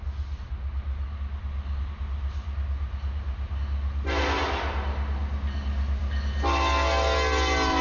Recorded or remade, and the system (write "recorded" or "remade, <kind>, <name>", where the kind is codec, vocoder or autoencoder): recorded